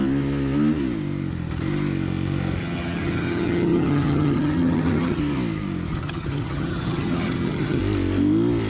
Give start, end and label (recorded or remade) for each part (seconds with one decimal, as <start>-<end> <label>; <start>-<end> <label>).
0.0-2.6 recorded; 2.6-5.2 remade; 5.2-5.9 recorded; 5.9-7.8 remade; 7.8-8.7 recorded